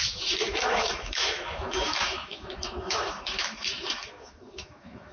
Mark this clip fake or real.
fake